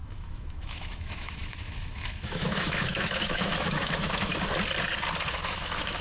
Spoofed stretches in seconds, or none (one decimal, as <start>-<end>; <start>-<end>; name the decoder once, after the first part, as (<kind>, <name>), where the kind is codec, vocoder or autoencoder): 0.0-4.3 (autoencoder, DAC-VAE); 5.3-6.0